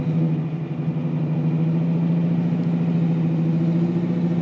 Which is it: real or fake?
real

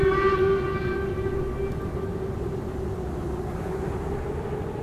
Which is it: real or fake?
real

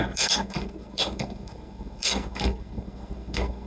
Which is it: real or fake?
fake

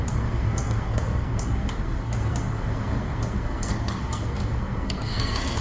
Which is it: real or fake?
fake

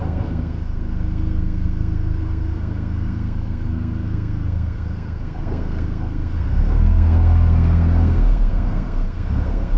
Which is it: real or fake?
fake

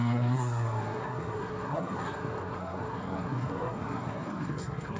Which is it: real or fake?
fake